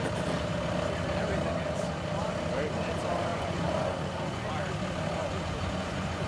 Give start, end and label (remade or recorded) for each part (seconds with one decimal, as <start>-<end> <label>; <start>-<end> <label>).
0.0-3.3 recorded; 3.3-4.5 remade; 4.5-5.2 recorded; 5.2-6.3 remade